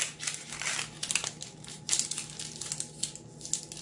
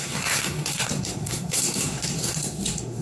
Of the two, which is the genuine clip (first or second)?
first